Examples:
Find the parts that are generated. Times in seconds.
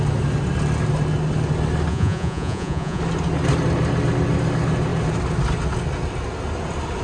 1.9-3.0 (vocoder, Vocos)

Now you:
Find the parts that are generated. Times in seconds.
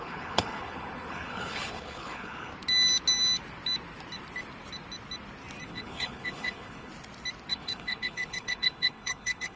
0.0-2.5 (codec, HILCodec); 5.7-6.9; 7.5-9.6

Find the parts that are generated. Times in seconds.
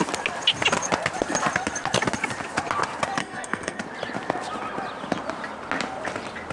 3.2-3.8 (codec, SNAC)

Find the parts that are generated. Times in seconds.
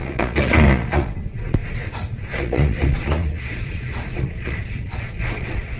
0.0-5.8 (vocoder, Vocos)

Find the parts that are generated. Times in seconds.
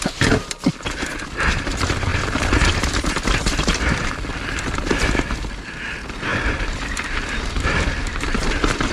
2.1-3.1 (vocoder, BigVGAN v2); 6.3-8.9